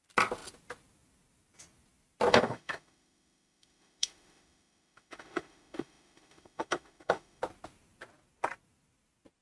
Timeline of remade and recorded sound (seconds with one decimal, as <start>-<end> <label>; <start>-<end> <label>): 0.0-2.3 recorded; 2.3-7.4 remade; 7.4-9.4 recorded

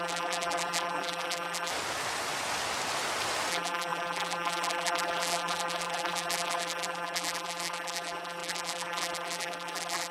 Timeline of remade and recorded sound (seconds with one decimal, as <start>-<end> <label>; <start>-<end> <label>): 0.0-1.7 remade; 1.7-3.5 recorded; 3.5-10.1 remade

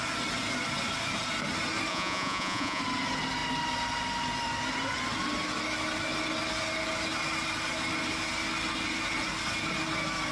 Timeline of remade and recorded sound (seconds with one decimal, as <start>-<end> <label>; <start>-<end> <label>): 0.0-1.9 recorded; 1.9-2.8 remade; 2.8-10.3 recorded

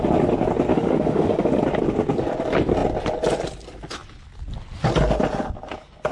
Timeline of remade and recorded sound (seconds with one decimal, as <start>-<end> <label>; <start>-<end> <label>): 0.0-0.7 recorded; 0.7-1.6 remade; 1.6-6.1 recorded

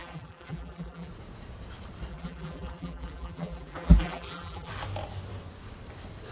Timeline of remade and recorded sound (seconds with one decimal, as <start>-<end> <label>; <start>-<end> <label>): 0.0-1.1 remade; 1.1-2.1 recorded; 2.1-4.7 remade; 4.7-6.3 recorded

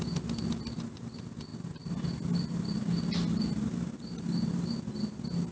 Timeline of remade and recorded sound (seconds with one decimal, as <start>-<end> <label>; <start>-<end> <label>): 0.0-5.5 recorded

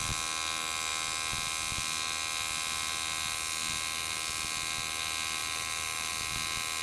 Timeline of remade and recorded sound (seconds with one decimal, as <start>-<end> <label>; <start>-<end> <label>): 0.0-5.4 recorded; 5.4-6.1 remade; 6.1-6.8 recorded